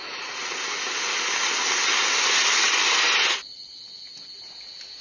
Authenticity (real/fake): real